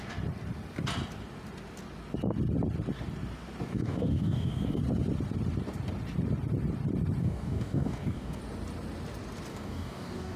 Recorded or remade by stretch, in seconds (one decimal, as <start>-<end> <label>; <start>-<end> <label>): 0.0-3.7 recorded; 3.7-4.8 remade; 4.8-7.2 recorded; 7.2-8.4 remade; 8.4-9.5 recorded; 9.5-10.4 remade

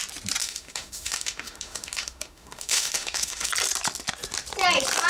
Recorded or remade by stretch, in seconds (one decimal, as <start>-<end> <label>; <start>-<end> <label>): 0.0-0.4 recorded; 0.4-3.5 remade; 3.5-5.1 recorded

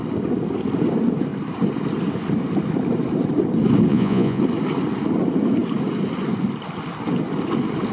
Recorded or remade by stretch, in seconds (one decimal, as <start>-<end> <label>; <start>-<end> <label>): 0.0-3.9 recorded; 3.9-4.4 remade; 4.4-7.9 recorded

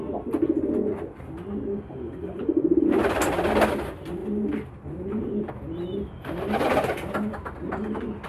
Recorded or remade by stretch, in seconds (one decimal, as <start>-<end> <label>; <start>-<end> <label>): 0.0-4.2 recorded; 4.2-5.5 remade; 5.5-8.3 recorded

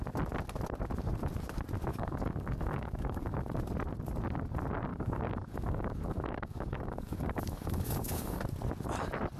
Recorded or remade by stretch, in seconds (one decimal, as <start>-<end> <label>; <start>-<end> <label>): 0.0-1.9 recorded; 1.9-3.4 remade; 3.4-4.9 recorded; 4.9-8.4 remade; 8.4-9.4 recorded

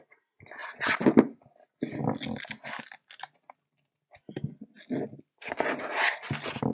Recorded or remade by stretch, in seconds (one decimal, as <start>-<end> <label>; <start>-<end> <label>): 0.0-6.7 recorded

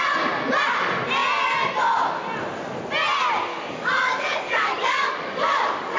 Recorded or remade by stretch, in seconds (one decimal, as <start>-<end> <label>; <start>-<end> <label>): 0.0-3.5 recorded; 3.5-6.0 remade

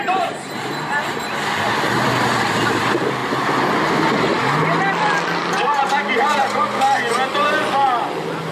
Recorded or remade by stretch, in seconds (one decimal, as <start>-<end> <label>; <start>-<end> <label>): 0.0-8.5 recorded